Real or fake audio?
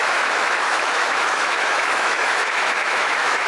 fake